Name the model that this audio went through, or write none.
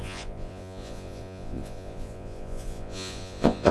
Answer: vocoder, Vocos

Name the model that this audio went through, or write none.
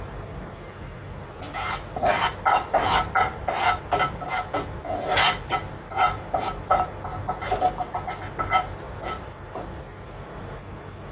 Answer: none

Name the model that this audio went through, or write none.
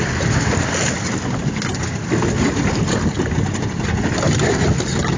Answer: none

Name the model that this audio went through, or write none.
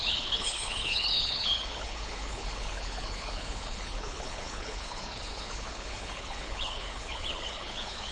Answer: codec, HILCodec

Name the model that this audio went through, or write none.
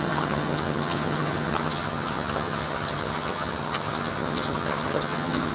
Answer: vocoder, HiFi-GAN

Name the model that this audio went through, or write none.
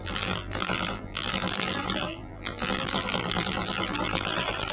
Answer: vocoder, BigVGAN v2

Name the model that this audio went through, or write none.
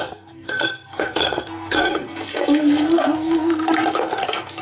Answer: codec, SNAC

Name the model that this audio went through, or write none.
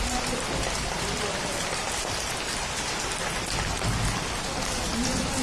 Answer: none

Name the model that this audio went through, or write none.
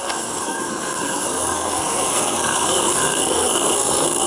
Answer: codec, SNAC